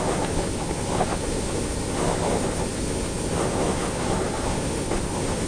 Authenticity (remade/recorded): remade